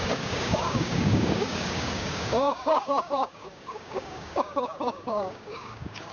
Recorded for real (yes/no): no